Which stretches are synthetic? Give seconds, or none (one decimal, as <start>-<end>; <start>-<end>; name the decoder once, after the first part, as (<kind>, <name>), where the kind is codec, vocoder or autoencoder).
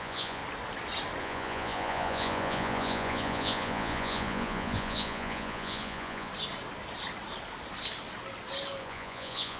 0.0-0.4 (vocoder, Vocos); 1.2-6.3; 8.8-9.6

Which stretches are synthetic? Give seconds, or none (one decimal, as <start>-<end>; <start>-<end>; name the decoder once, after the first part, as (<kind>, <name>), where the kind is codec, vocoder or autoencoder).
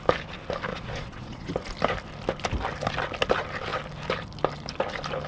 0.7-1.5 (vocoder, Vocos)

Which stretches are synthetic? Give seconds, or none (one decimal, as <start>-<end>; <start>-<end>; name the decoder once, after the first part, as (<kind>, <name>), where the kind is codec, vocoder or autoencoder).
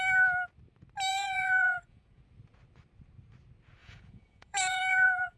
1.1-2.2 (vocoder, Vocos); 3.8-5.4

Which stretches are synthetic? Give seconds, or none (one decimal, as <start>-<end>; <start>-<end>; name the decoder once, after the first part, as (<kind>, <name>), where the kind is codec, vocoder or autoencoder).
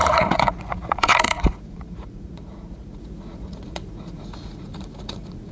0.0-5.5 (vocoder, Vocos)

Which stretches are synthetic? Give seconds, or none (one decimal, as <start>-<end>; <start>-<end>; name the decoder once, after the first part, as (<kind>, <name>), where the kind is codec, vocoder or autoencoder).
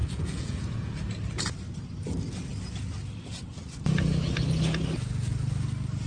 0.0-1.0 (vocoder, Vocos)